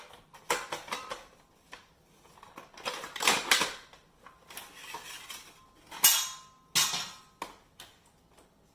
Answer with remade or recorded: recorded